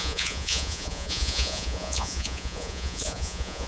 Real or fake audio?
fake